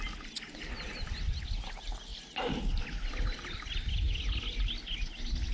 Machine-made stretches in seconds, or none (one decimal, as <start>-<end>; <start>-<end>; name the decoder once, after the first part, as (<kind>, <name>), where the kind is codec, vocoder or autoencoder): none